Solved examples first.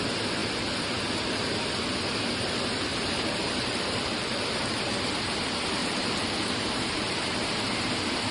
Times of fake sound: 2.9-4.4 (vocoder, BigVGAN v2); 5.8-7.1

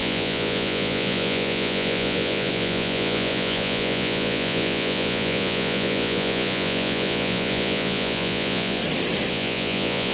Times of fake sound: 0.0-8.8 (vocoder, Vocos); 9.3-10.1

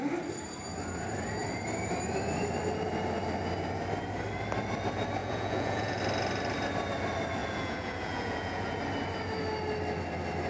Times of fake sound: 5.2-6.0 (vocoder, Vocos); 7.4-8.8